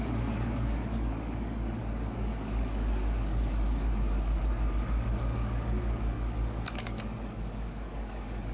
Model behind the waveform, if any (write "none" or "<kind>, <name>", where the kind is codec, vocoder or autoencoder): codec, DAC